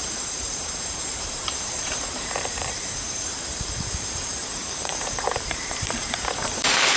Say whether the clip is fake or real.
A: fake